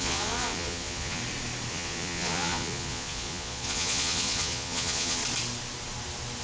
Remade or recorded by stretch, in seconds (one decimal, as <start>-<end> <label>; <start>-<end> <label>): 0.0-1.2 remade; 1.2-1.7 recorded; 1.7-5.2 remade; 5.2-6.4 recorded